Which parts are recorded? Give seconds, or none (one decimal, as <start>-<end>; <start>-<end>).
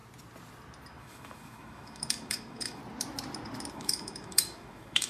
0.0-1.0; 2.8-3.7